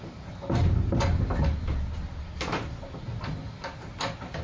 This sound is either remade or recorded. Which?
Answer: recorded